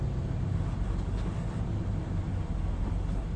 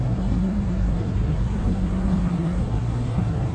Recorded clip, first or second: first